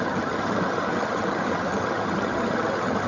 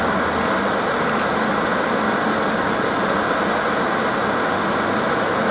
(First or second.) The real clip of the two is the second